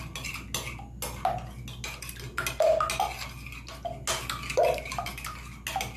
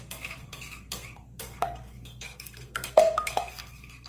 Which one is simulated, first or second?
second